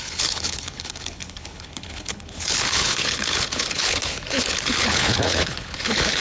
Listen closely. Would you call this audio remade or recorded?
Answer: remade